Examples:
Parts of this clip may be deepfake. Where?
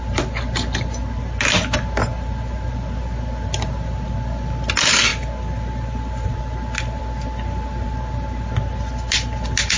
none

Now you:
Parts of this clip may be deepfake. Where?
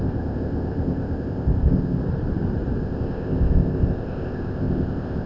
0.0-2.0 (codec, ZipCodec); 2.8-5.3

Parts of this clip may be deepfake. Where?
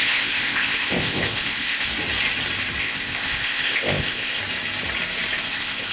0.0-1.9 (codec, ZipCodec); 2.8-4.4; 5.4-5.9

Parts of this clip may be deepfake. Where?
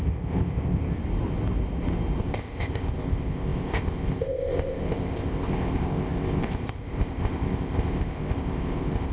0.0-1.0 (codec, ZipCodec); 2.2-9.1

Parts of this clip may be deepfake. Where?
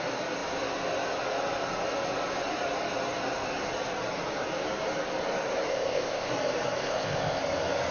5.7-6.3 (codec, ZipCodec); 6.8-7.4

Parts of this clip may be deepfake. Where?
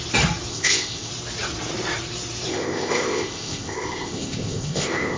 0.5-1.1 (codec, ZipCodec); 2.5-5.2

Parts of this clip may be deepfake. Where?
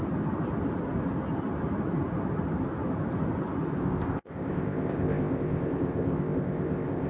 3.8-7.1 (codec, ZipCodec)